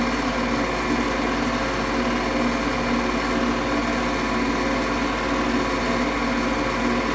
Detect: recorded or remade recorded